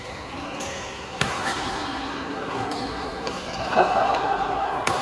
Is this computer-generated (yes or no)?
yes